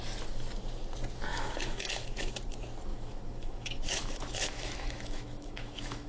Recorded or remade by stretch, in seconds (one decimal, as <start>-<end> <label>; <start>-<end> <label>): 0.0-1.3 recorded; 1.3-2.3 remade; 2.3-2.9 recorded; 2.9-6.1 remade